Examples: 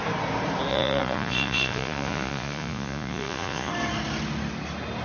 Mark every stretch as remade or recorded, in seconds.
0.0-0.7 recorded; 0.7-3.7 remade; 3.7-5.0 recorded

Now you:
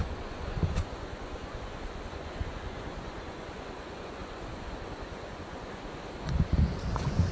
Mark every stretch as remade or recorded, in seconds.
0.0-7.3 remade

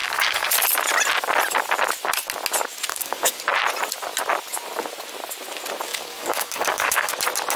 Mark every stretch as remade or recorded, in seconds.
0.0-0.5 remade; 0.5-2.9 recorded; 2.9-3.4 remade; 3.4-5.9 recorded; 5.9-7.1 remade; 7.1-7.6 recorded